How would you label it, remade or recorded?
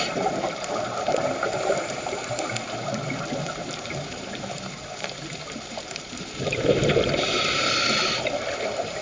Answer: remade